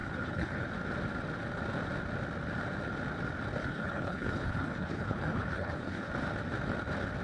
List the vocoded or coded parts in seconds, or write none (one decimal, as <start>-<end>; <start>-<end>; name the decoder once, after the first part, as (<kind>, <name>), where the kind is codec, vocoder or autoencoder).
0.0-0.7 (codec, HILCodec); 3.6-6.1